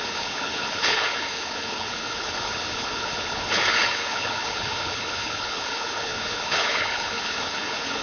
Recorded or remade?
remade